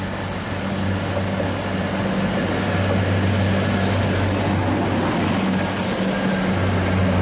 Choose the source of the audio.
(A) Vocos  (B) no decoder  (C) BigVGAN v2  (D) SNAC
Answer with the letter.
B